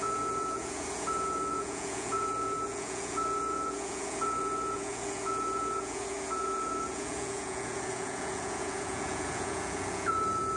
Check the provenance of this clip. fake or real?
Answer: fake